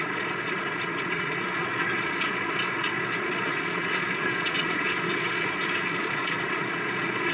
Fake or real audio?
fake